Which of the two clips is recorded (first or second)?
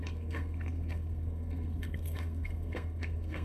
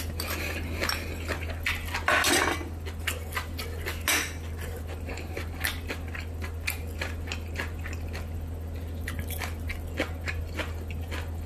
second